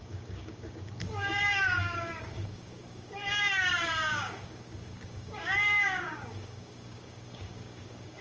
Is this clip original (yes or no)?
no